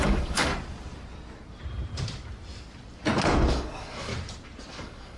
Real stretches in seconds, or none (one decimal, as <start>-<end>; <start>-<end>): 0.5-3.5; 4.1-4.7